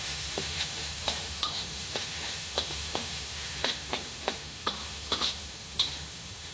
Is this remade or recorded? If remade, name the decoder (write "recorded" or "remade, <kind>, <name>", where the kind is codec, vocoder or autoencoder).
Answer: remade, autoencoder, DAC-VAE